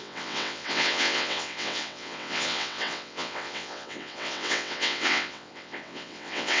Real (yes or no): no